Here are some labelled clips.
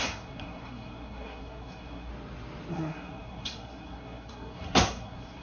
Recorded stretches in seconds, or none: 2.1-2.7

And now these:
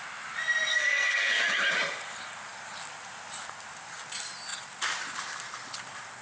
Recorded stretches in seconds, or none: 0.0-0.7; 1.4-6.2

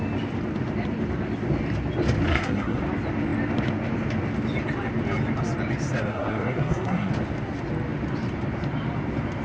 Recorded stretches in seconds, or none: 0.0-2.3; 2.8-6.1; 7.1-9.4

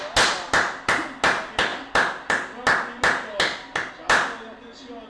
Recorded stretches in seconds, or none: 0.0-5.1

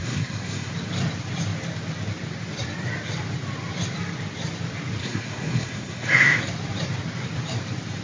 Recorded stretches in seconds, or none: 0.7-5.0; 6.4-8.0